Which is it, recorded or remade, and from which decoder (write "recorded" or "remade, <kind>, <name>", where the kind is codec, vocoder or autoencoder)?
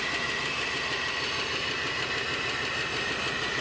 recorded